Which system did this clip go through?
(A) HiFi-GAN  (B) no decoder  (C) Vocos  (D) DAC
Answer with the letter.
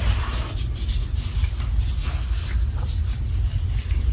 B